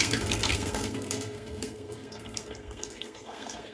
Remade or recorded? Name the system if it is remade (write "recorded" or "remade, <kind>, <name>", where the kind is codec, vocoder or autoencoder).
remade, codec, SNAC